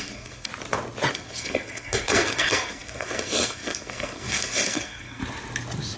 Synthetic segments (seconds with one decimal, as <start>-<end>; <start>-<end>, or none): 0.0-0.5; 1.1-5.2